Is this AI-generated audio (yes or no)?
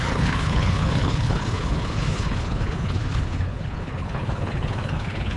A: yes